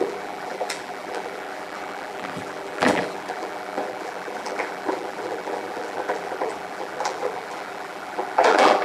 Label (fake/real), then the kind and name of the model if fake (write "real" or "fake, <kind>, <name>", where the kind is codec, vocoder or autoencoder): fake, vocoder, BigVGAN v2